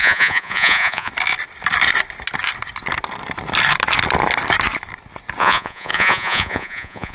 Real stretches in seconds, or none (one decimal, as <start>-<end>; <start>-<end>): 1.1-5.4